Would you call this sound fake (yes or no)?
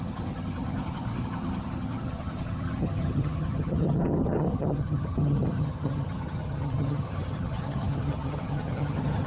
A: yes